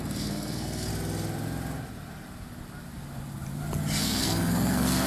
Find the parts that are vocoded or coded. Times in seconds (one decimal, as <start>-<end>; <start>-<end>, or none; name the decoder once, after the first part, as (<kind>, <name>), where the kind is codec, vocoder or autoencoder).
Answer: 0.0-0.9 (codec, SNAC); 4.0-5.1